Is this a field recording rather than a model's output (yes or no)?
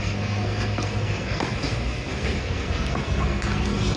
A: no